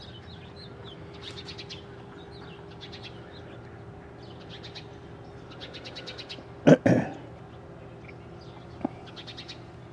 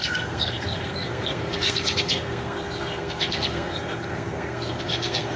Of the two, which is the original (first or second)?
first